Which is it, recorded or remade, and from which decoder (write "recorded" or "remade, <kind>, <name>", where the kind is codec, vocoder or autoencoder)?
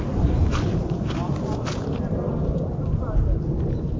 remade, vocoder, BigVGAN v2